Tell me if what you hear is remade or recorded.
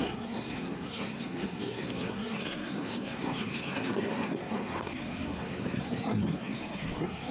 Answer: remade